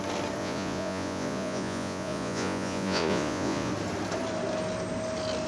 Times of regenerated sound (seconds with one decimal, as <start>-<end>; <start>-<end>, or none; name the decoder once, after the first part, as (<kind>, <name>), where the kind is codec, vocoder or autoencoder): 0.4-3.7 (vocoder, Vocos)